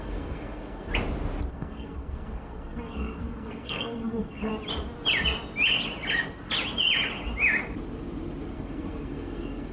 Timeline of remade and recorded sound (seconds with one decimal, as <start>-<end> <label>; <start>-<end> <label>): 0.0-0.9 remade; 0.9-1.5 recorded; 1.5-4.5 remade; 4.5-8.5 recorded; 8.5-9.7 remade